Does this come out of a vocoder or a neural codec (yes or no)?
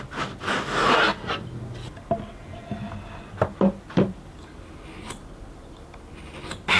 no